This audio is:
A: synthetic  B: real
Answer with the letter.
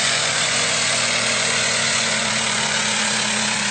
A